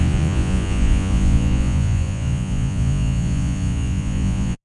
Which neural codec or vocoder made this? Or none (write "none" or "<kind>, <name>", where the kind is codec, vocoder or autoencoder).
vocoder, Vocos